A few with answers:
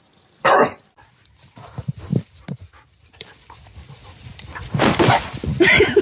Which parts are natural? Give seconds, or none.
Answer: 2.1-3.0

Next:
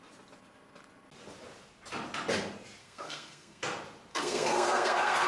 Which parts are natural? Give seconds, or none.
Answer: 0.0-2.8; 3.6-4.1